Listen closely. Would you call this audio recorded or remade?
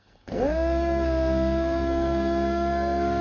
remade